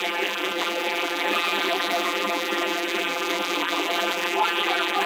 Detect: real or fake fake